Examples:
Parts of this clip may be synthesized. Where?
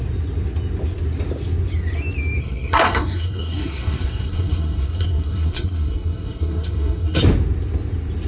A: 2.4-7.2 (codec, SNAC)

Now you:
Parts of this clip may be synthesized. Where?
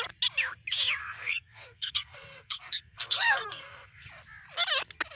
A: 1.0-4.1 (codec, SNAC)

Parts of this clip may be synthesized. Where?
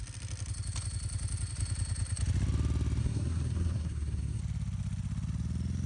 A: 3.0-4.4 (codec, SNAC)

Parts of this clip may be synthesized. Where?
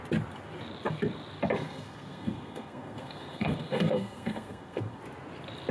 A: 1.6-5.0 (codec, SNAC)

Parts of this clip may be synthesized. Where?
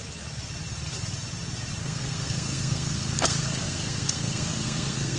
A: 1.8-5.2 (codec, SNAC)